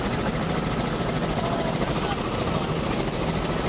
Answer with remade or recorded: recorded